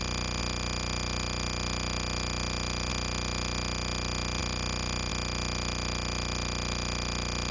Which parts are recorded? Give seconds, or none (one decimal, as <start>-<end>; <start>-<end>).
0.0-7.5